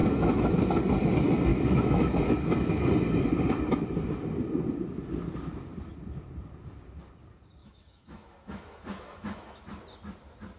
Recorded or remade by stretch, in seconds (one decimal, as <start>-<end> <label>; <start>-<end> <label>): 0.0-0.6 remade; 0.6-1.5 recorded; 1.5-2.9 remade; 2.9-7.6 recorded; 7.6-9.7 remade; 9.7-10.6 recorded

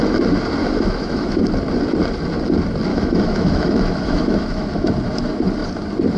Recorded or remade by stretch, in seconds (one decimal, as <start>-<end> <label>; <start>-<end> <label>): 0.0-0.6 recorded; 0.6-1.4 remade; 1.4-2.9 recorded; 2.9-4.9 remade; 4.9-6.2 recorded

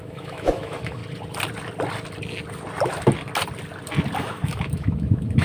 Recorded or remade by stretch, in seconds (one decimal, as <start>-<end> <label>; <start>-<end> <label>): 0.0-1.0 remade; 1.0-4.2 recorded; 4.2-5.4 remade